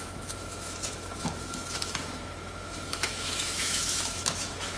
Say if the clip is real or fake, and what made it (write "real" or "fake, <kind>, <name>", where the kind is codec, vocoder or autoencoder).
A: fake, autoencoder, DAC-VAE